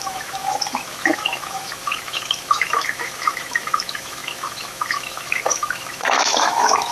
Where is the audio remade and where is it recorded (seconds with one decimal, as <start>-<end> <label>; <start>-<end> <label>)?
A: 0.0-6.9 remade